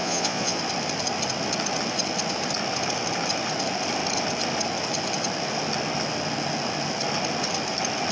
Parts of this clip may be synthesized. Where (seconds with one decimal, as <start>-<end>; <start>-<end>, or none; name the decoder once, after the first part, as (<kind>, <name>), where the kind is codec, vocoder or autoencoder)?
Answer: 0.0-0.6 (vocoder, Vocos)